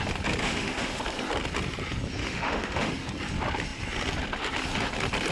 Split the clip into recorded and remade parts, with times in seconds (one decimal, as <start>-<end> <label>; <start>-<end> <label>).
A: 0.0-0.4 recorded; 0.4-1.0 remade; 1.0-2.2 recorded; 2.2-2.9 remade; 2.9-5.3 recorded